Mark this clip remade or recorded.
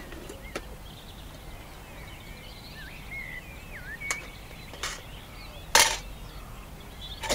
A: recorded